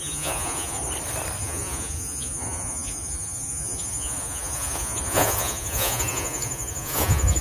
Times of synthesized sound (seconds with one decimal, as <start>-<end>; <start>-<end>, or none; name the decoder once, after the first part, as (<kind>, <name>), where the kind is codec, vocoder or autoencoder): 0.0-0.8 (vocoder, Vocos); 1.4-7.4